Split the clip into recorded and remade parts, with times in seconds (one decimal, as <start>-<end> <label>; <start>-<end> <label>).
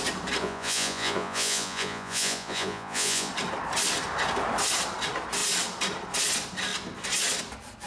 0.0-0.4 recorded; 0.4-3.3 remade; 3.3-7.9 recorded